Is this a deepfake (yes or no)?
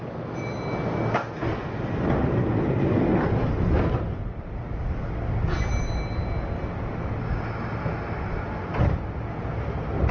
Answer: no